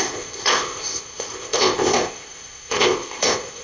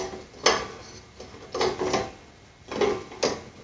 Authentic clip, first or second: second